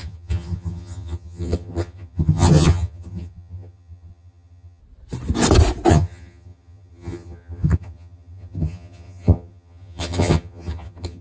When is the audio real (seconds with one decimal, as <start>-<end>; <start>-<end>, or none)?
4.8-5.9